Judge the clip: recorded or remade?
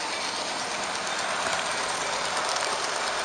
recorded